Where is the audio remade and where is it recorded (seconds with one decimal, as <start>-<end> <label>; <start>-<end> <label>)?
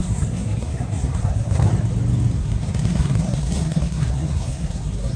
0.0-1.7 remade; 1.7-2.4 recorded; 2.4-5.2 remade